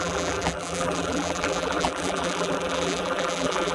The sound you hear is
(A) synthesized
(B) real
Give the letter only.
A